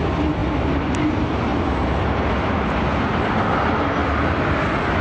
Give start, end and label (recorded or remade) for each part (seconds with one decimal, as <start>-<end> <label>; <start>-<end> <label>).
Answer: 0.0-4.0 recorded; 4.0-4.6 remade; 4.6-5.0 recorded